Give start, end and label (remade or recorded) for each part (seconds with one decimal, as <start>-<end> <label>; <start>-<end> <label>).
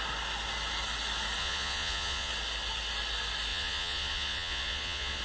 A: 0.0-1.4 recorded; 1.4-2.3 remade; 2.3-3.5 recorded; 3.5-5.2 remade